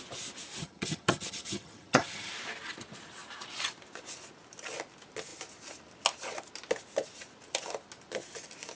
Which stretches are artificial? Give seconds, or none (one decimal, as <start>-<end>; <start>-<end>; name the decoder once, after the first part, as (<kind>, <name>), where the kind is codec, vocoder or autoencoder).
0.6-2.3 (vocoder, HiFi-GAN)